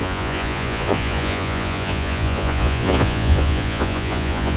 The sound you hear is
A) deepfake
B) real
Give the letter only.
A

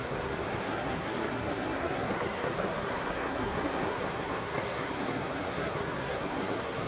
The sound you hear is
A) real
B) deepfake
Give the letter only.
B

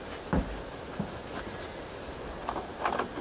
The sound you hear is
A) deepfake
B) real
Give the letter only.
B